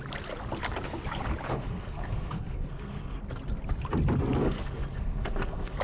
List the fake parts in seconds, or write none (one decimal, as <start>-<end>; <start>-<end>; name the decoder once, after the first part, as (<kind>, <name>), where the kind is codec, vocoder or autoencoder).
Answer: 1.5-3.2 (codec, SNAC); 4.4-5.8